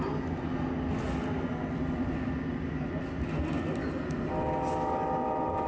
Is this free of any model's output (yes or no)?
yes